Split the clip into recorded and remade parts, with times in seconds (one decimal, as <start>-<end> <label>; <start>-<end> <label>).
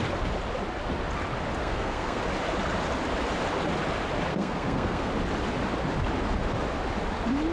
0.0-1.6 recorded; 1.6-2.2 remade; 2.2-4.3 recorded; 4.3-5.1 remade; 5.1-7.5 recorded